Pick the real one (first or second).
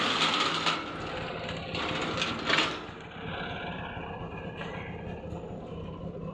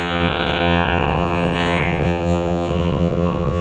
first